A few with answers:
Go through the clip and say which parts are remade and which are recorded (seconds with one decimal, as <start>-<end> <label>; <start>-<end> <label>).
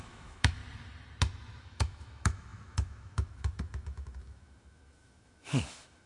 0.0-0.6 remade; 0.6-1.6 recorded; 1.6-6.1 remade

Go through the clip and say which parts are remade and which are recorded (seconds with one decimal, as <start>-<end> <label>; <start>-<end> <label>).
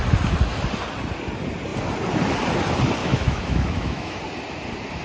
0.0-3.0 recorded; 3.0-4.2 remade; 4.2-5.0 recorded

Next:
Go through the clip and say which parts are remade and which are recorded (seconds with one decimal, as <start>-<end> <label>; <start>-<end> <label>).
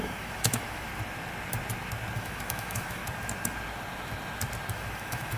0.0-0.9 remade; 0.9-2.2 recorded; 2.2-3.0 remade; 3.0-4.7 recorded; 4.7-5.4 remade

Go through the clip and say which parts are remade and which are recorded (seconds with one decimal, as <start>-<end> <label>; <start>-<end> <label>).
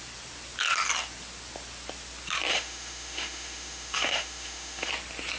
0.0-2.5 recorded; 2.5-4.9 remade; 4.9-5.4 recorded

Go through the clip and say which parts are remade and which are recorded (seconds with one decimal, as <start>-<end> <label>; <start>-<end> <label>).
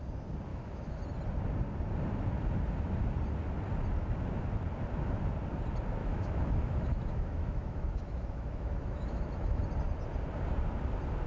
0.0-0.5 recorded; 0.5-1.0 remade; 1.0-6.0 recorded; 6.0-9.6 remade; 9.6-11.3 recorded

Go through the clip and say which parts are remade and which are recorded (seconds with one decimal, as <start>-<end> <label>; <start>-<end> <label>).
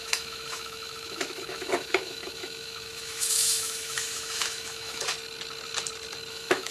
0.0-5.0 remade; 5.0-6.3 recorded; 6.3-6.7 remade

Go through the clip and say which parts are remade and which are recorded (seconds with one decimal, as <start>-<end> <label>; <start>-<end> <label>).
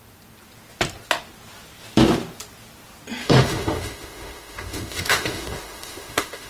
0.0-3.2 recorded; 3.2-6.5 remade